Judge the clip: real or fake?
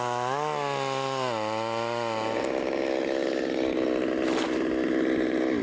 real